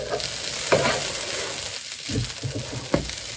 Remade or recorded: recorded